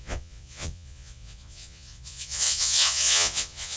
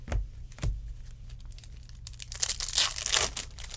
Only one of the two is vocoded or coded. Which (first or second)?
first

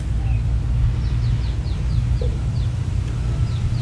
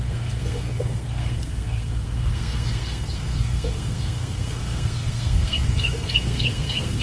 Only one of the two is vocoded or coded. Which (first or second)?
second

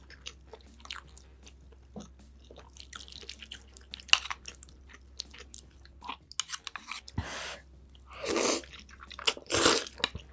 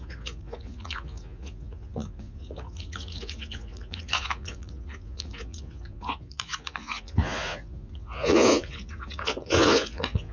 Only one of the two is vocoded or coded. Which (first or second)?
second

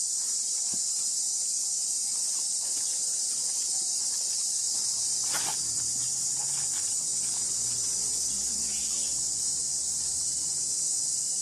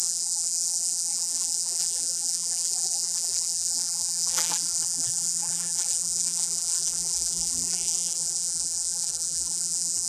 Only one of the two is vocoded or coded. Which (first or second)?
second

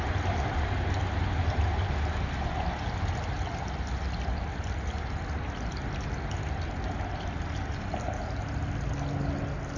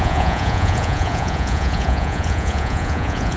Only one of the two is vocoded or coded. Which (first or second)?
second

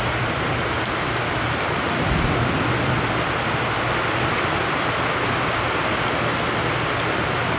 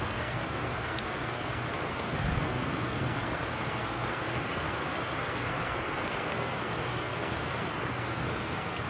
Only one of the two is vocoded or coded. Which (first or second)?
second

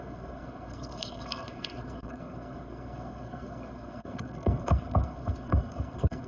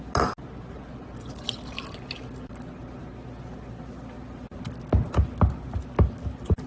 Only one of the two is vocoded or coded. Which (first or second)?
first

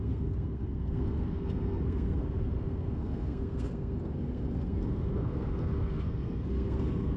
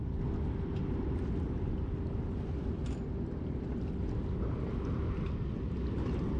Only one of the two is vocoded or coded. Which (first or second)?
first